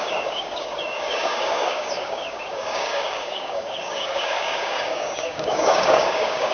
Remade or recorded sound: remade